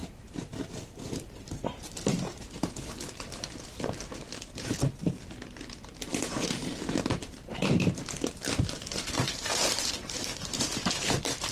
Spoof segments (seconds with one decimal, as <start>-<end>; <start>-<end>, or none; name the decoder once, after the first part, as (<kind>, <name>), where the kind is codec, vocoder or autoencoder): 0.0-4.8 (vocoder, BigVGAN v2); 6.1-11.5